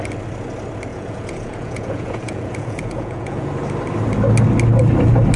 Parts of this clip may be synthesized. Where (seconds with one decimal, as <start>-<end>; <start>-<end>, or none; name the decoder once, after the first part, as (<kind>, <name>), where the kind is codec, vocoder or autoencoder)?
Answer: 0.9-3.5 (vocoder, Vocos)